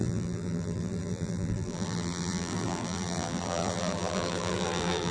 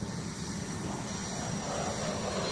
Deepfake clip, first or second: first